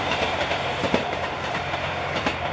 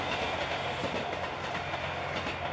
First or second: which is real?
second